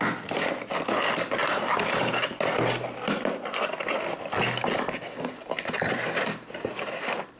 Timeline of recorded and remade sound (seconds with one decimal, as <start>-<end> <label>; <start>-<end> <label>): 0.0-7.4 recorded